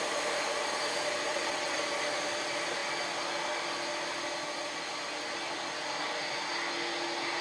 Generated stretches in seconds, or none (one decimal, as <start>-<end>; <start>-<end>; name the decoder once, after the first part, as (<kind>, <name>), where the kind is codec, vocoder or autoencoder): 1.3-1.8 (vocoder, WaveNeXt)